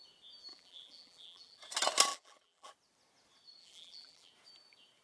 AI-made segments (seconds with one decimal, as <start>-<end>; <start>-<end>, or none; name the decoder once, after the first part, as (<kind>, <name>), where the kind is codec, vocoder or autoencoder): 0.5-1.6 (vocoder, BigVGAN v2); 2.1-2.7; 3.6-4.3